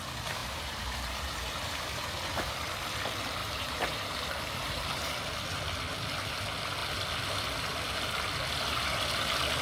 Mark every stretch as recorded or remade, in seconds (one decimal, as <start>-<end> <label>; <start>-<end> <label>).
0.0-0.4 recorded; 0.4-2.5 remade; 2.5-3.4 recorded; 3.4-5.2 remade; 5.2-9.6 recorded